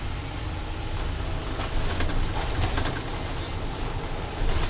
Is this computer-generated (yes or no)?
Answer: no